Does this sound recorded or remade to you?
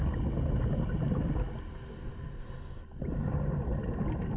recorded